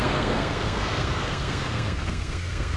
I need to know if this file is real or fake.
fake